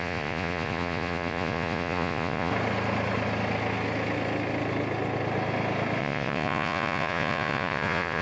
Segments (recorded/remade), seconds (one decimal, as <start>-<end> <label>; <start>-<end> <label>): 0.0-2.5 remade; 2.5-6.0 recorded; 6.0-8.2 remade